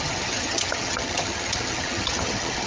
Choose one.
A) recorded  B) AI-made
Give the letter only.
B